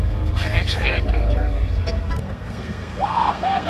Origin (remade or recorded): remade